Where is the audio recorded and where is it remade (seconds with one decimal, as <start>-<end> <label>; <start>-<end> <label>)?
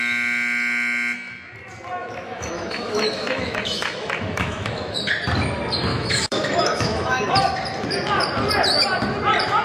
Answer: 0.0-2.0 recorded; 2.0-5.0 remade; 5.0-5.9 recorded; 5.9-7.3 remade; 7.3-9.6 recorded